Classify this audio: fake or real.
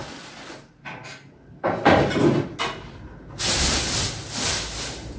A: real